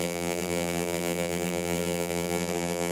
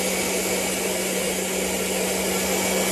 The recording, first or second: second